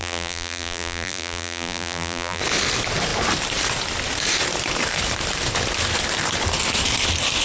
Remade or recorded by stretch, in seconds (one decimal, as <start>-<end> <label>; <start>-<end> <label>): 0.0-2.4 remade; 2.4-7.4 recorded